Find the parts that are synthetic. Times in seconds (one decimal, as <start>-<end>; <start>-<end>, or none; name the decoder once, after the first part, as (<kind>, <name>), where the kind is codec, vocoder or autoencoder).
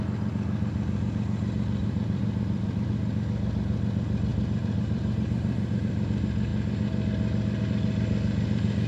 1.8-2.9 (vocoder, BigVGAN v2); 4.3-5.9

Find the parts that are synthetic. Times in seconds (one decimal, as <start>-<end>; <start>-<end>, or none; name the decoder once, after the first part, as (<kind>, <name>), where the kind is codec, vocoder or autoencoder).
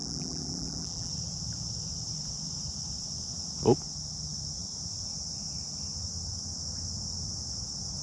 0.0-1.1 (vocoder, BigVGAN v2)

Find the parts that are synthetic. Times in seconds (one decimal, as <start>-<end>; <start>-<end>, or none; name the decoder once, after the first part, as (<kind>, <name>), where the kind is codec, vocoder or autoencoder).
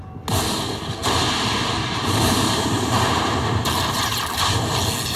1.0-3.6 (vocoder, BigVGAN v2)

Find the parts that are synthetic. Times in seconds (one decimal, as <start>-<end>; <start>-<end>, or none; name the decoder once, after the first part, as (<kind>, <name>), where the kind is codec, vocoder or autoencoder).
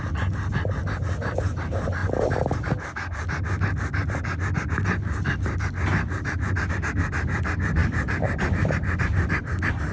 7.8-9.0 (vocoder, BigVGAN v2)